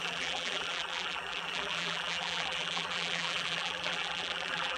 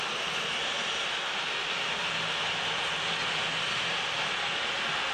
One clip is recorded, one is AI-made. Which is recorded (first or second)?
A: second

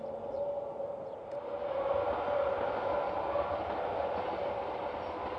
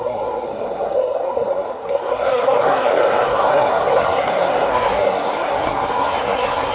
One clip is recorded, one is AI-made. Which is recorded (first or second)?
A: first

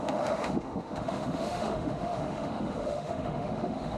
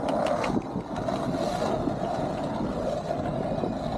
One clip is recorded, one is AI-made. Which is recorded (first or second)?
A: second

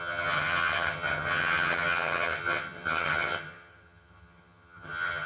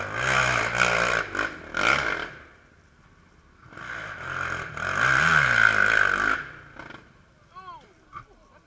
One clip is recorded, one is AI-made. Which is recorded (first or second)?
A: second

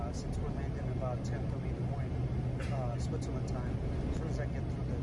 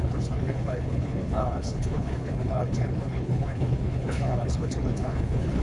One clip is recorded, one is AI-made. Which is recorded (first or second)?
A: first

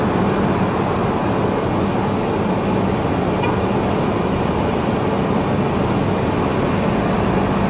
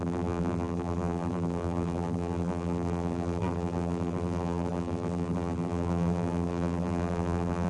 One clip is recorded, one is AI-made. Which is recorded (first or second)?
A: first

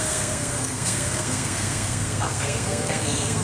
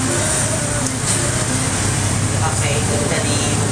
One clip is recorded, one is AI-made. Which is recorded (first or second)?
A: second